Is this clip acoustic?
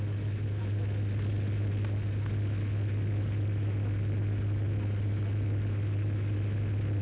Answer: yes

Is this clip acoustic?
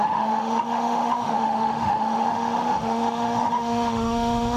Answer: no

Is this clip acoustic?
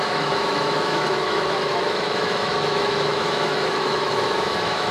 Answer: no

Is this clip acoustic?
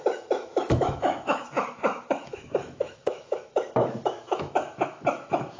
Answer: no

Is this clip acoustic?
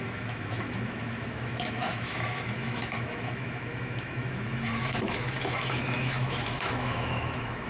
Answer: no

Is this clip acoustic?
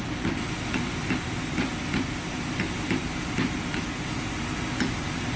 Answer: yes